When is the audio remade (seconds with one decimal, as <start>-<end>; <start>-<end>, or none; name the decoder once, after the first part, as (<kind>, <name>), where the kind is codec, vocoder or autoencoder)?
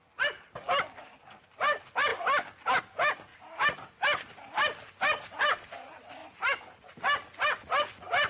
none